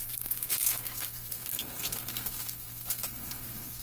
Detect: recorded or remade remade